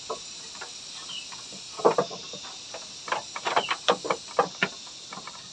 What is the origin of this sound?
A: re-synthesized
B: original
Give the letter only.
B